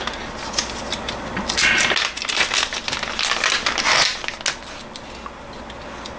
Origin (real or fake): real